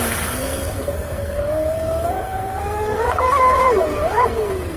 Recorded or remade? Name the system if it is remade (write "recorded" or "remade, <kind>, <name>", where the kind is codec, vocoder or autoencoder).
remade, codec, SNAC